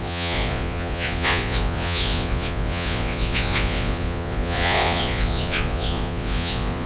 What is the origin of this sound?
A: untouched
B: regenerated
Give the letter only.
B